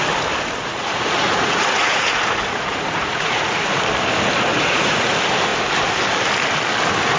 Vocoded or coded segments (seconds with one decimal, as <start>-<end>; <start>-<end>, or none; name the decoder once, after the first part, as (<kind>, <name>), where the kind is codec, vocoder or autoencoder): 0.6-3.8 (vocoder, Vocos); 4.5-5.1